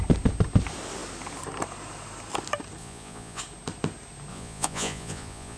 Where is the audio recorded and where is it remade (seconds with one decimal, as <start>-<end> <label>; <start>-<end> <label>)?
0.0-2.8 recorded; 2.8-3.4 remade; 3.4-4.3 recorded; 4.3-5.6 remade